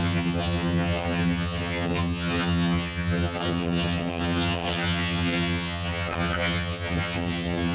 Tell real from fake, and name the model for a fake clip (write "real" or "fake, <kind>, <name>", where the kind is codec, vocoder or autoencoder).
fake, vocoder, HiFi-GAN